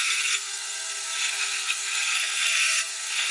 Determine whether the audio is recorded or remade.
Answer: remade